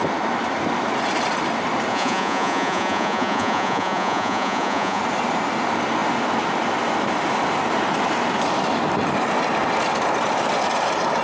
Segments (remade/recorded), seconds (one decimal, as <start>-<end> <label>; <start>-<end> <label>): 0.0-1.9 recorded; 1.9-5.0 remade; 5.0-11.2 recorded